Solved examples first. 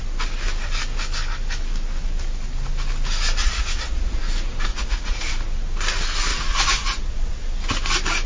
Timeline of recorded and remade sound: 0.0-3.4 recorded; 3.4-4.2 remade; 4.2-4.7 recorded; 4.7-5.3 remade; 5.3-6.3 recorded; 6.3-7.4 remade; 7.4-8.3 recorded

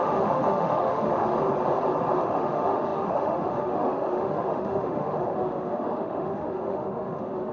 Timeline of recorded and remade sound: 0.0-1.3 remade; 1.3-2.2 recorded; 2.2-7.5 remade

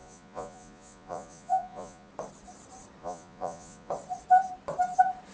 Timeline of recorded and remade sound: 0.0-2.1 remade; 2.1-3.0 recorded; 3.0-3.9 remade; 3.9-5.3 recorded